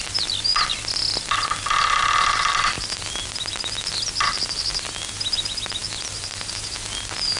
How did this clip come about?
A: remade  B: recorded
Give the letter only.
B